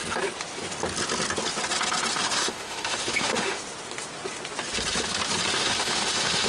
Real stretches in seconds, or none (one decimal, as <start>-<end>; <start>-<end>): 0.0-2.1; 3.6-5.5